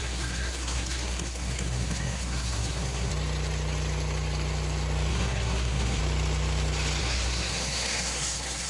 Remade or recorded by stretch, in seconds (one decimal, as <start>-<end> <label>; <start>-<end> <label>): 0.0-3.1 remade; 3.1-5.1 recorded; 5.1-6.0 remade; 6.0-7.0 recorded; 7.0-8.7 remade